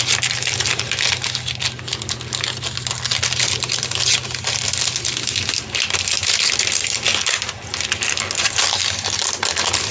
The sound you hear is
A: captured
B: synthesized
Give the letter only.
A